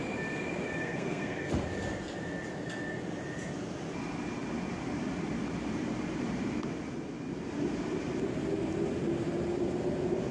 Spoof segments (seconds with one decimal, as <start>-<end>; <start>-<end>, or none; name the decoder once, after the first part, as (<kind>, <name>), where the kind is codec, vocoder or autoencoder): 0.8-1.5 (codec, SNAC)